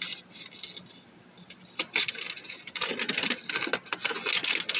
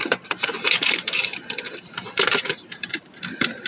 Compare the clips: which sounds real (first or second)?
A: first